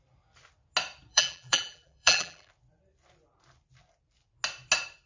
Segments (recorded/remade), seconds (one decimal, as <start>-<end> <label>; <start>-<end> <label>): 0.0-1.1 recorded; 1.1-2.5 remade; 2.5-5.1 recorded